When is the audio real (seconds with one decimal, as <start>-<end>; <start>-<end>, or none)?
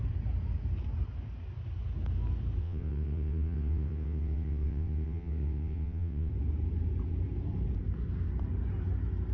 0.0-2.6; 6.3-9.3